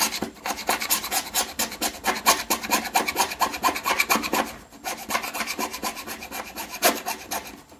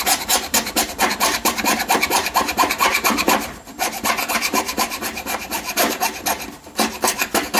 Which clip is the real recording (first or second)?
first